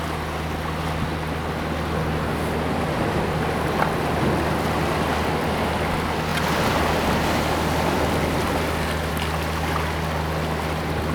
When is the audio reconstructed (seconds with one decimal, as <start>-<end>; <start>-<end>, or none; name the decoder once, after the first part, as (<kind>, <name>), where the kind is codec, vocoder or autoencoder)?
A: none